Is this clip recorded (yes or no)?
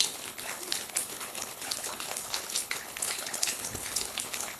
no